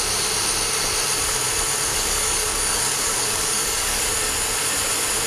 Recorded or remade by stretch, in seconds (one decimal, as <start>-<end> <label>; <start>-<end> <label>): 0.0-1.9 recorded; 1.9-4.0 remade; 4.0-5.3 recorded